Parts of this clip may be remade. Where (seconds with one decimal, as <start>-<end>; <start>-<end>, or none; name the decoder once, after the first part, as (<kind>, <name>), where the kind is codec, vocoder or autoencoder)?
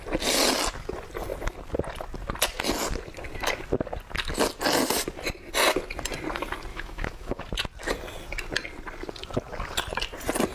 6.7-7.4 (autoencoder, DAC-VAE)